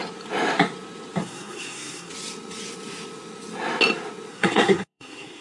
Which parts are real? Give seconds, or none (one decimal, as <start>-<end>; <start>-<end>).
0.0-1.2; 2.1-4.3